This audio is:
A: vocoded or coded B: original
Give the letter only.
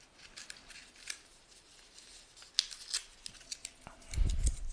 B